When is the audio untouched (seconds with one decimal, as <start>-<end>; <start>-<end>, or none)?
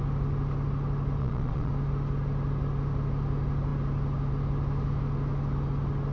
0.0-1.2; 1.7-6.1